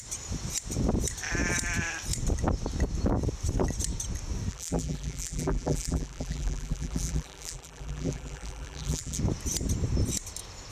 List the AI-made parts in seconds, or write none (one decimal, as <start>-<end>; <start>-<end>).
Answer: 4.5-9.2